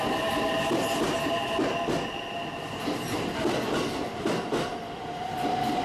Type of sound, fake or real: real